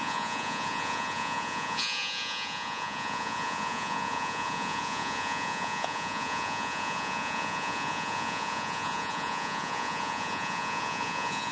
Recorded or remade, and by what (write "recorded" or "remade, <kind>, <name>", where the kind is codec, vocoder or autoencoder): remade, vocoder, Vocos